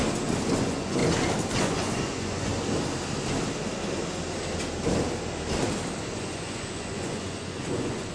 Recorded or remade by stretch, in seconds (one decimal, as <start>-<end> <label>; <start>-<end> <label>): 0.0-0.6 recorded; 0.6-1.0 remade; 1.0-1.6 recorded; 1.6-2.5 remade; 2.5-6.1 recorded; 6.1-8.1 remade